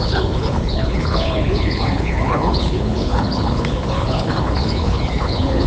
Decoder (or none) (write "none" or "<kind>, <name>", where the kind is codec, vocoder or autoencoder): codec, HILCodec